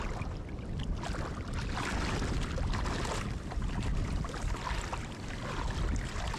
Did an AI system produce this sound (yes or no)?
no